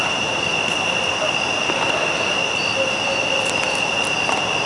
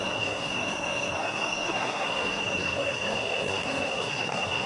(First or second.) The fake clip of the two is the second